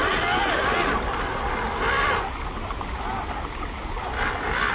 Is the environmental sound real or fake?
real